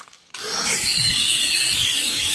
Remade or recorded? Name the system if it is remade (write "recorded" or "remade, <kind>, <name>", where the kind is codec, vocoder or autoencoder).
remade, codec, DAC